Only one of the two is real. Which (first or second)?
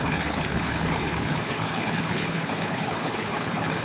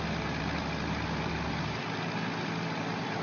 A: second